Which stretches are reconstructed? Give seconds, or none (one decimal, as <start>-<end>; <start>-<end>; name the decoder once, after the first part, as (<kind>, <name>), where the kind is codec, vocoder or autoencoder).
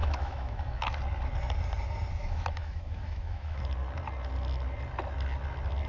0.0-1.0 (autoencoder, DAC-VAE); 2.2-3.6